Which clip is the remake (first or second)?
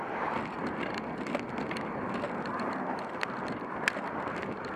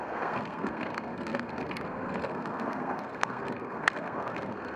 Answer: second